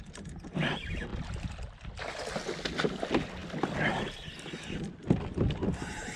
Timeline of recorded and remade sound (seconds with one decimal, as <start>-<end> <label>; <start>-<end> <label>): 0.0-6.2 recorded